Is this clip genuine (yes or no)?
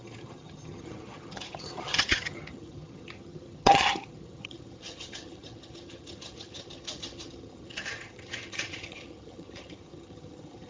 no